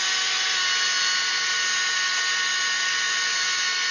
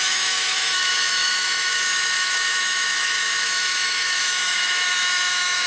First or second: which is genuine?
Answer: first